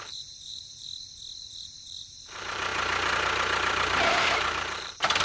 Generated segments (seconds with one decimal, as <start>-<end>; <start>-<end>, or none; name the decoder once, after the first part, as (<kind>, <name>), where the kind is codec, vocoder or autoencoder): 0.0-0.9 (vocoder, BigVGAN v2); 1.5-2.7; 4.1-5.2